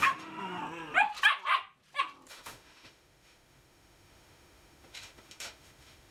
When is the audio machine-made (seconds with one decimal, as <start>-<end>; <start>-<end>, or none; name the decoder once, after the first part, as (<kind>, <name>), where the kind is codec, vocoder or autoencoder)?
0.0-0.6 (autoencoder, DAC-VAE); 2.3-6.1

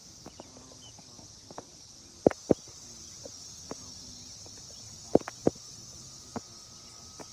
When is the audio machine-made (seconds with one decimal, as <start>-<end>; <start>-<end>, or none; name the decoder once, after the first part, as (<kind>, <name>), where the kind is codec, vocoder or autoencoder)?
none

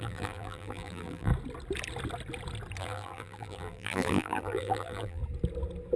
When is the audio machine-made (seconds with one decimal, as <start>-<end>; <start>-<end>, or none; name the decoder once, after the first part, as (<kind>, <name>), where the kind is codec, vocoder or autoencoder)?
0.0-1.3 (vocoder, BigVGAN v2); 2.8-5.2

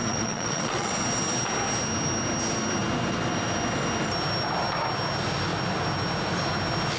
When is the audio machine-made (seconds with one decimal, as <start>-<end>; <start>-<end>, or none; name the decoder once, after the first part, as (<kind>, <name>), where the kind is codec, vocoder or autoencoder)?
0.0-0.9 (vocoder, Vocos)

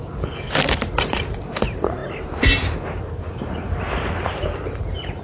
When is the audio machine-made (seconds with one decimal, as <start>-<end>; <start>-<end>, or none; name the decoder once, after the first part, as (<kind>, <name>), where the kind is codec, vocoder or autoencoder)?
0.9-5.2 (vocoder, BigVGAN v2)